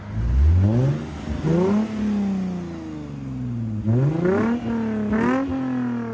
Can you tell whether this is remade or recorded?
recorded